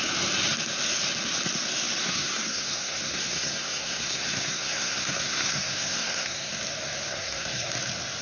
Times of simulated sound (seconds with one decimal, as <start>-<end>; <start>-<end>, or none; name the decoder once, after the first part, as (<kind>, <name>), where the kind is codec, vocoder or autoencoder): 2.0-6.5 (codec, SNAC); 7.1-7.7